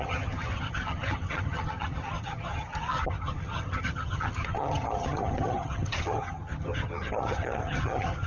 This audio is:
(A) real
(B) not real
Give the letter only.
B